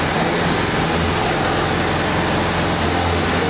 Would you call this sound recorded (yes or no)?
yes